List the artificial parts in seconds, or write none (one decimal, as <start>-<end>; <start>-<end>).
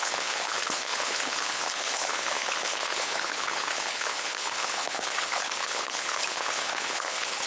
0.0-7.5